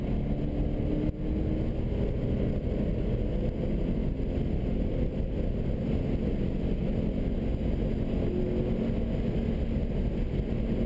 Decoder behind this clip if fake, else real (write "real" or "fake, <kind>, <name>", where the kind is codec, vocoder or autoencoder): real